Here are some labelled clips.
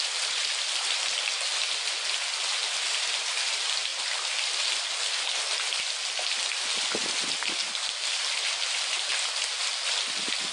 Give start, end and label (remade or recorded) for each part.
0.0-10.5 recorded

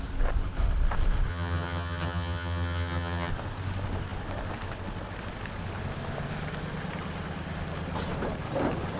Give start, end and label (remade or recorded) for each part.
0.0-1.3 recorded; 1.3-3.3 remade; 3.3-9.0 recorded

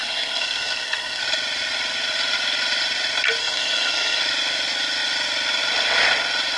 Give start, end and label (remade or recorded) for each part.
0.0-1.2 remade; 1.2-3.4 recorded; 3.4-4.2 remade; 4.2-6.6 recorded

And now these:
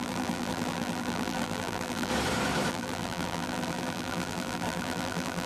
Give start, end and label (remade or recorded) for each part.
0.0-2.1 remade; 2.1-2.7 recorded; 2.7-5.5 remade